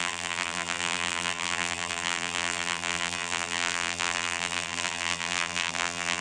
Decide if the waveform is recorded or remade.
remade